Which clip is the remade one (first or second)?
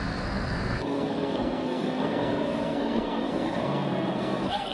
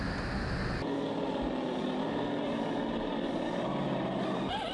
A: first